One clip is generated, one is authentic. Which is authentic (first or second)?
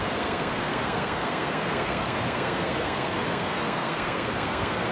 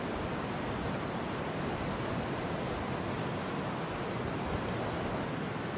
second